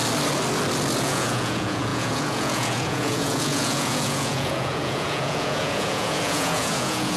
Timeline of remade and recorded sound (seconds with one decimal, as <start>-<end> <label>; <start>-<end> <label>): 0.0-1.0 recorded; 1.0-7.2 remade